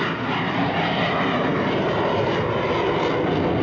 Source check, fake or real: real